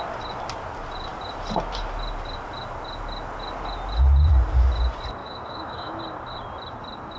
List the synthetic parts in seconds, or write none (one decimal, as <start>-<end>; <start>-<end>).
5.2-6.0